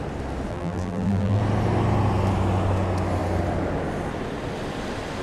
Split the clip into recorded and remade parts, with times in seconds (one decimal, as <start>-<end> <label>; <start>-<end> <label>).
0.0-0.5 recorded; 0.5-1.4 remade; 1.4-5.2 recorded